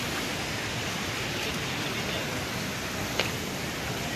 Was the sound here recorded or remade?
recorded